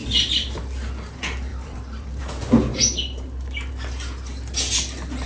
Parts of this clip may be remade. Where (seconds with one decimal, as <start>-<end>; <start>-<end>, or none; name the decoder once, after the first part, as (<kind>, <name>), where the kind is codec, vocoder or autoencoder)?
0.0-0.6 (vocoder, BigVGAN v2); 1.5-2.2